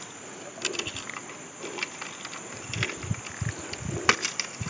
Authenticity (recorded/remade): recorded